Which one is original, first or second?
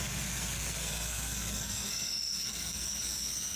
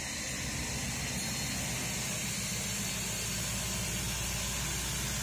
second